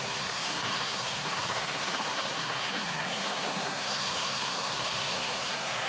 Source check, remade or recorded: remade